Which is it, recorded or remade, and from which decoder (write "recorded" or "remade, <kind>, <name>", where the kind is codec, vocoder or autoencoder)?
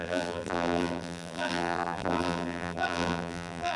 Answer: remade, vocoder, BigVGAN v2